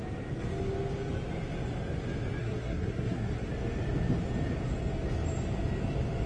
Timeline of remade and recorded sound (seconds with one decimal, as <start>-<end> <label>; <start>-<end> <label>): 0.0-2.4 recorded; 2.4-3.5 remade; 3.5-6.3 recorded